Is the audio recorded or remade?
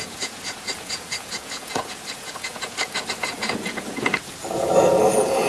remade